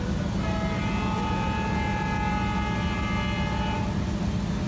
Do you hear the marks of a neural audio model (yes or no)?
no